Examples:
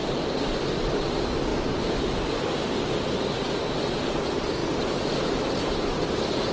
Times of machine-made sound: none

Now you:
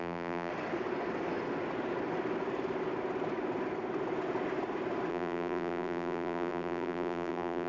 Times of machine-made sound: 0.0-0.5 (vocoder, BigVGAN v2); 5.1-7.7

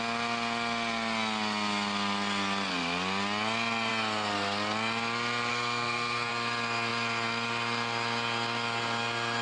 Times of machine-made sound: 5.5-6.3 (codec, SNAC)

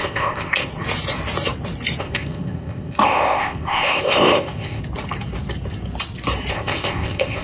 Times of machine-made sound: 0.0-0.7 (codec, ZipCodec); 2.0-4.8; 6.5-7.4

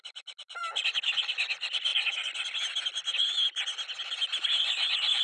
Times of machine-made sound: none